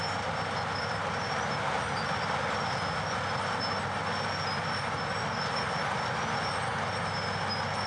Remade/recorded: recorded